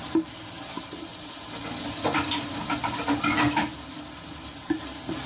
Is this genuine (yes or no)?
yes